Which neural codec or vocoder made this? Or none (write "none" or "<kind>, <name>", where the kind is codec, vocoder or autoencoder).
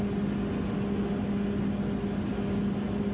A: none